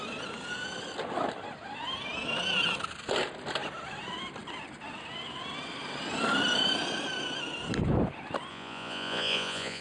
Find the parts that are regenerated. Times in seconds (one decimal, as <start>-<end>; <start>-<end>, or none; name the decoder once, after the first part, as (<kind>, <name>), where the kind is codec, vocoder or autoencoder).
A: 8.5-9.8 (vocoder, Vocos)